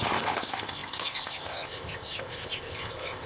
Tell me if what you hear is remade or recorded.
remade